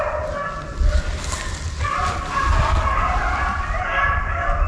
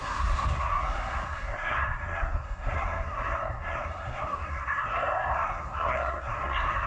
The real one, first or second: first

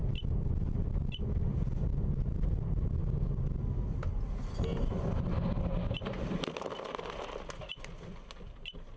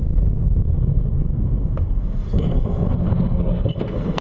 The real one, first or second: first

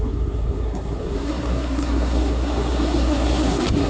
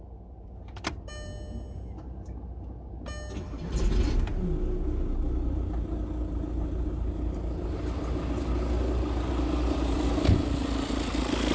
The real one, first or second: second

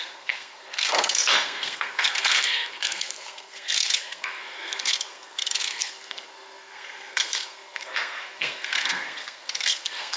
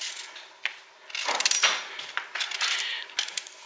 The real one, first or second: second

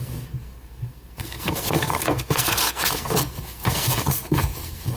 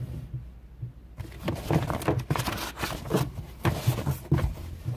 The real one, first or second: second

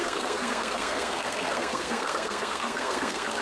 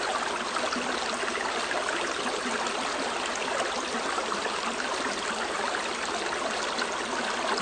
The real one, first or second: second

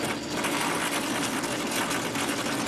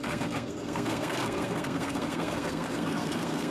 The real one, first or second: first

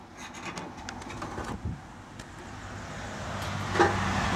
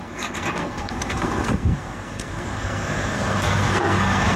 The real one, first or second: first